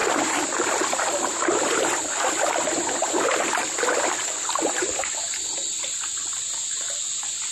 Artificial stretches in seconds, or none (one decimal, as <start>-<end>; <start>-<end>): none